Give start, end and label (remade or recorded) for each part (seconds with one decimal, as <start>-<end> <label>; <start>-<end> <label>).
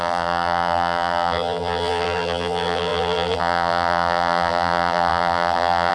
0.0-5.9 remade